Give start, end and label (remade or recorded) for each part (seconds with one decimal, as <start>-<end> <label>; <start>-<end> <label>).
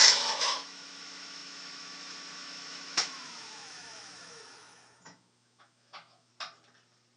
0.0-6.3 remade; 6.3-7.2 recorded